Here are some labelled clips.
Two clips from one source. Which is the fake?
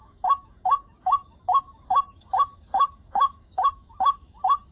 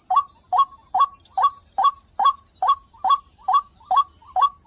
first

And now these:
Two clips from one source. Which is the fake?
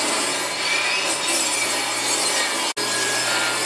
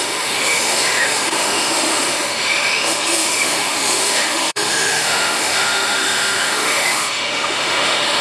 second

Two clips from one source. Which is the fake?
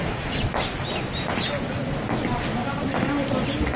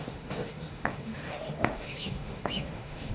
second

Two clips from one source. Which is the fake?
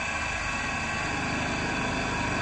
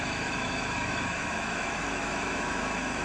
second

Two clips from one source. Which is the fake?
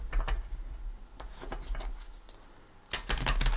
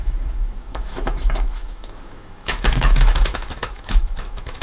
second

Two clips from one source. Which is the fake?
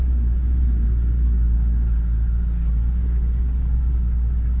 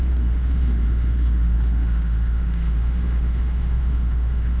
second